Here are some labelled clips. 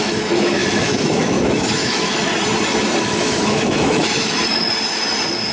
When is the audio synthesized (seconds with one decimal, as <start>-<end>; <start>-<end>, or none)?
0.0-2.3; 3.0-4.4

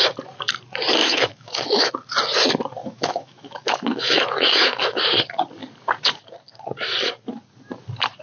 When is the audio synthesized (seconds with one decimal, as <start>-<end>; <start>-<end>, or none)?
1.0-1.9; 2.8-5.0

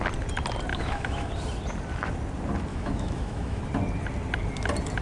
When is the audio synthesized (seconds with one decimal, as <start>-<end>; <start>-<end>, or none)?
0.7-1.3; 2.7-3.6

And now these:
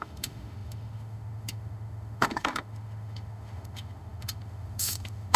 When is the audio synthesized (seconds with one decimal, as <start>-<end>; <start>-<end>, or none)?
0.0-5.4